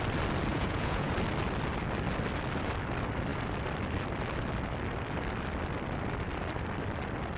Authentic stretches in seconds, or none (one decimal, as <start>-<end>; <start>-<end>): 0.0-0.5; 1.1-7.4